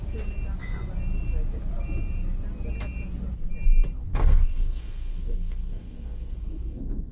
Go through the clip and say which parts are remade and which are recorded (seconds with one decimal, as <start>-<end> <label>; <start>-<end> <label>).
0.0-4.1 recorded; 4.1-7.1 remade